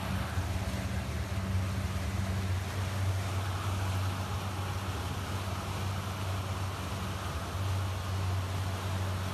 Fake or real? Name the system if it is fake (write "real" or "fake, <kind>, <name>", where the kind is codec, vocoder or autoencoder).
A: real